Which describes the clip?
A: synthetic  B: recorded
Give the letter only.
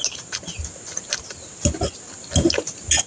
B